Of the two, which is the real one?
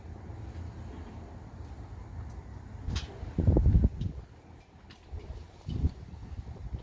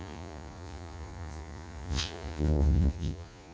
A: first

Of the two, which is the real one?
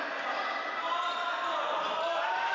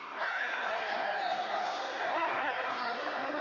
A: first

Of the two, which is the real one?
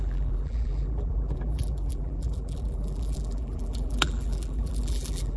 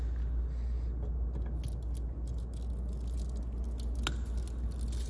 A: second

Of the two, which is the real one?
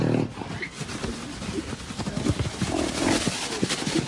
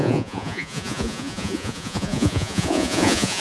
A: first